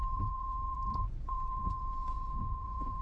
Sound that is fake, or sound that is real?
fake